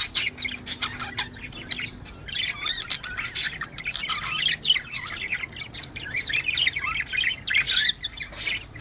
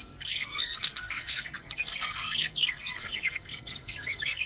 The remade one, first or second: second